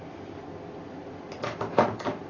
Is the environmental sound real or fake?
real